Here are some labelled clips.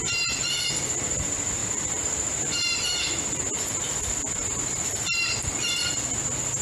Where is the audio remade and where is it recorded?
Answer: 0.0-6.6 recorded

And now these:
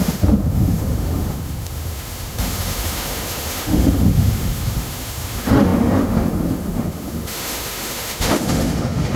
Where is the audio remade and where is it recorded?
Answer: 0.0-9.2 remade

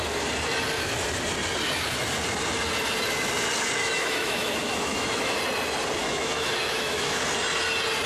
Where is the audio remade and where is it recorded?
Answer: 0.0-3.8 recorded; 3.8-5.4 remade; 5.4-6.0 recorded; 6.0-7.2 remade; 7.2-8.1 recorded